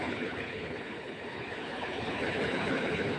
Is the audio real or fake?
fake